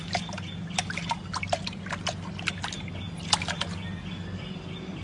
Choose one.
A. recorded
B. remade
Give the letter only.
A